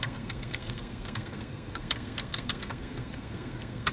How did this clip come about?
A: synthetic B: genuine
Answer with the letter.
A